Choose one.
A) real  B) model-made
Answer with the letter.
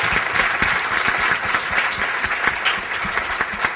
A